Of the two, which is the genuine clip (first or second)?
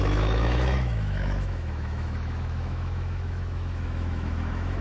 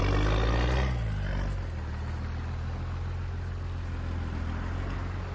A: second